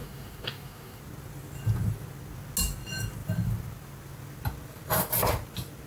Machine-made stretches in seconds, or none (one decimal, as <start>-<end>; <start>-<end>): 0.0-1.0